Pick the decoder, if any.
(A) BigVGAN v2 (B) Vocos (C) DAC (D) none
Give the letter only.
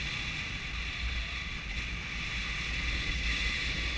D